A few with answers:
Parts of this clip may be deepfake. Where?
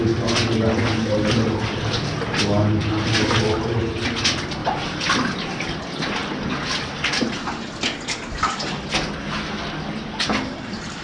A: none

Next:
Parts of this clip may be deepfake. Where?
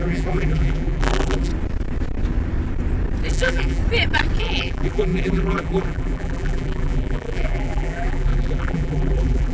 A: 0.0-1.5 (vocoder, BigVGAN v2); 3.3-3.8; 4.4-9.5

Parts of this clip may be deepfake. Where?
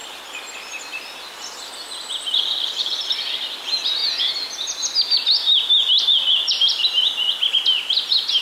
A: 1.7-4.0 (vocoder, BigVGAN v2); 6.0-6.8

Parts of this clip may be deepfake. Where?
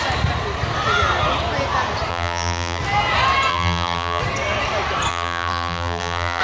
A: 2.1-2.8 (vocoder, BigVGAN v2); 3.5-4.2; 5.1-6.4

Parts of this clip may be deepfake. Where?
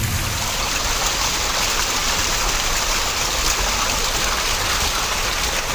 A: none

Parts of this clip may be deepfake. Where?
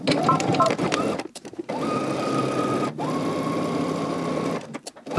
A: 0.5-2.4 (vocoder, BigVGAN v2)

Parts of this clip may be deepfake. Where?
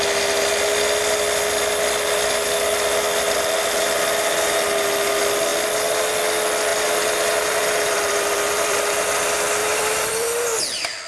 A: 6.7-9.2 (vocoder, BigVGAN v2); 9.6-10.6